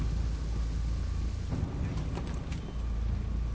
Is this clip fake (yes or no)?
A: no